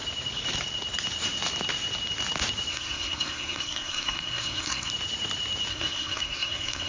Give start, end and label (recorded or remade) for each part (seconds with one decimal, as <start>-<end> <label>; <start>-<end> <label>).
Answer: 0.0-2.7 recorded; 2.7-4.9 remade; 4.9-5.7 recorded; 5.7-6.9 remade